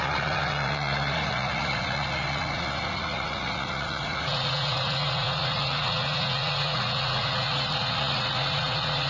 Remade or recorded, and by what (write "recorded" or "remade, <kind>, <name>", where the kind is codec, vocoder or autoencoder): remade, vocoder, Vocos